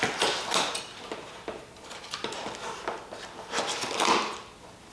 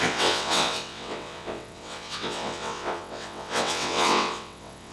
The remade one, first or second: second